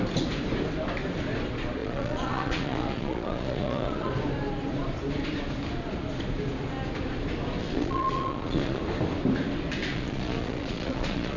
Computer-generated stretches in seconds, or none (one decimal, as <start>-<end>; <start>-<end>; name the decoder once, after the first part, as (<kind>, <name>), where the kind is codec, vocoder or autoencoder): 1.8-4.1 (vocoder, Vocos); 7.6-8.8; 9.9-11.4